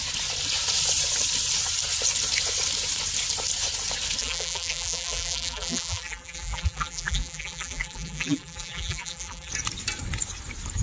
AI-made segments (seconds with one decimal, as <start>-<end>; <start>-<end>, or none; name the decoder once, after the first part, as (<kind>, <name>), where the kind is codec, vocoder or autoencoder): 4.2-9.5 (vocoder, BigVGAN v2)